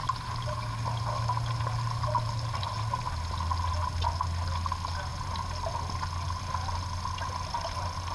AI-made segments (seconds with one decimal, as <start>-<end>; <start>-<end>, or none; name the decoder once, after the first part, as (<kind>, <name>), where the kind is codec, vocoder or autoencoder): none

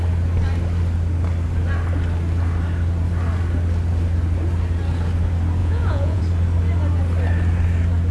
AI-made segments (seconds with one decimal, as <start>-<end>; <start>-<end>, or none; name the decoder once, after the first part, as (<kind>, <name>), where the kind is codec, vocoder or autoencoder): 5.6-6.2 (vocoder, Vocos)

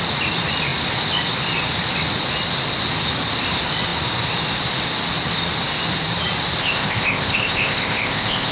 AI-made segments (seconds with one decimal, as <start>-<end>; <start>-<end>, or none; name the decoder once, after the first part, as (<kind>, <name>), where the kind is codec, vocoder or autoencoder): 6.6-8.5 (codec, ZipCodec)

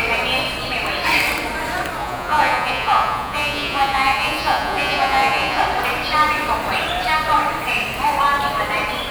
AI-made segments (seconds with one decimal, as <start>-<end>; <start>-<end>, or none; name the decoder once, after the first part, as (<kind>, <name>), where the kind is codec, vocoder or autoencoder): 2.0-5.6 (vocoder, Vocos)

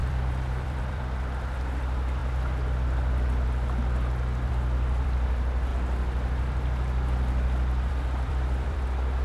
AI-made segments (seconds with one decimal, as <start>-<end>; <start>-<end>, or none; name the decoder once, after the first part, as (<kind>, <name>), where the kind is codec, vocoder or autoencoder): 0.0-2.2 (vocoder, BigVGAN v2); 4.5-5.7; 7.9-9.2